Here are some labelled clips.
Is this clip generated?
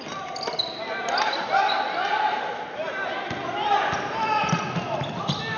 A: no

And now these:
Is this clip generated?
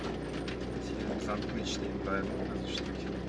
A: no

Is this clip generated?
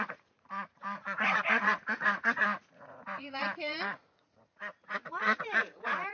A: yes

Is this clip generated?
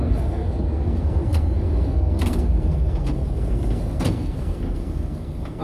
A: yes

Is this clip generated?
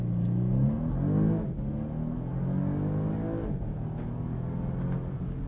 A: no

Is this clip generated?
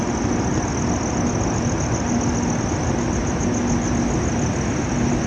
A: no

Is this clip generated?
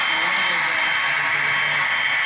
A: no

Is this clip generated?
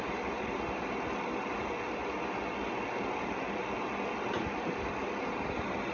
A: no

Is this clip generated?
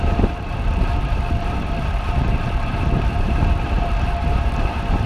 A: yes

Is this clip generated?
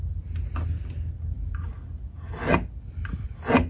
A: no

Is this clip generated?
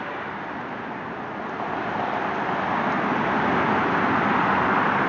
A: no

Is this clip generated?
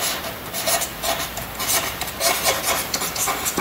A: yes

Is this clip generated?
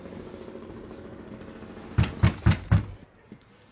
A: yes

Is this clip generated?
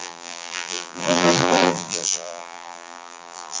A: yes